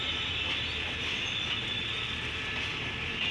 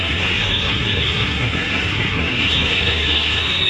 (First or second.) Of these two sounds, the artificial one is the second